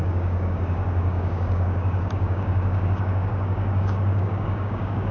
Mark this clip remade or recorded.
remade